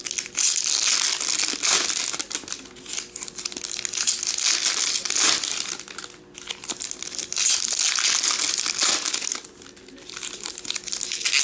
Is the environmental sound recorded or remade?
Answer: recorded